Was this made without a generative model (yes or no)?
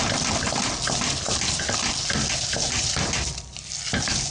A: yes